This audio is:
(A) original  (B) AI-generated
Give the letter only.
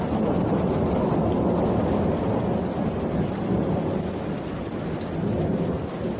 A